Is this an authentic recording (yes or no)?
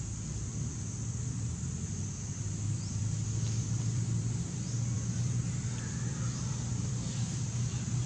no